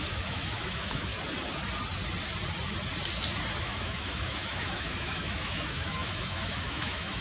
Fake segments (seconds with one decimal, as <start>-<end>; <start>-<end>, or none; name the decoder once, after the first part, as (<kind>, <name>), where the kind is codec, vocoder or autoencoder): 0.0-1.1 (autoencoder, DAC-VAE); 3.6-7.2